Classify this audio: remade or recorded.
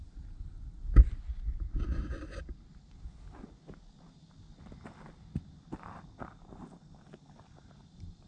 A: recorded